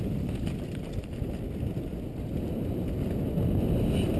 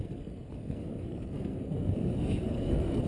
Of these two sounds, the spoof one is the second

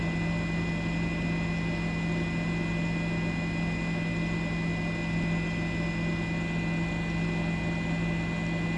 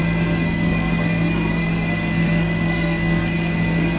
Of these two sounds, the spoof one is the second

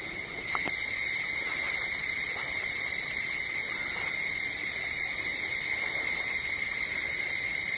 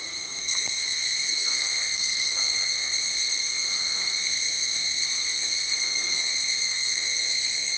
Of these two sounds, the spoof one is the second